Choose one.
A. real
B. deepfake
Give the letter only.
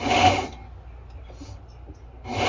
A